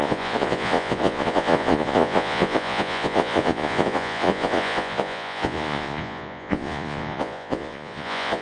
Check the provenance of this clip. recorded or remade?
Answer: remade